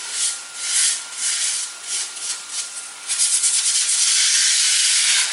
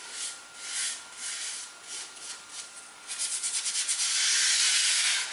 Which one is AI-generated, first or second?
first